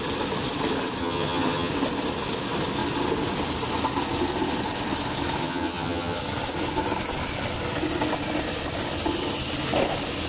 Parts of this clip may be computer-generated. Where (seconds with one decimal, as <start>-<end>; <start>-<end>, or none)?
1.0-1.7; 5.4-6.2